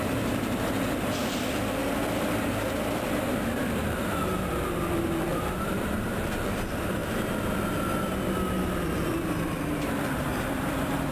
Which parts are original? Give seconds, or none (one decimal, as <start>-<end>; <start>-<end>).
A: 7.0-9.1